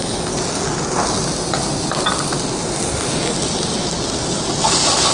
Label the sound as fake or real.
real